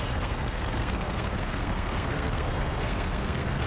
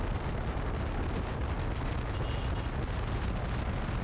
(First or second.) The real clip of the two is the second